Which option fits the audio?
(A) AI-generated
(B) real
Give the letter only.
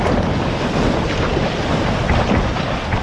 B